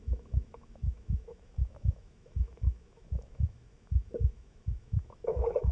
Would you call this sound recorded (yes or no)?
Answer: no